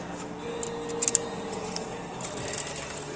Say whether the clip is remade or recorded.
recorded